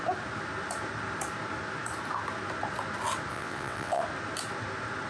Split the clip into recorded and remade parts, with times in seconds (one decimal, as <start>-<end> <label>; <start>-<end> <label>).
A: 0.0-3.3 recorded; 3.3-4.0 remade; 4.0-5.1 recorded